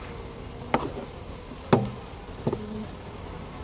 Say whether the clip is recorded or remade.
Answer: recorded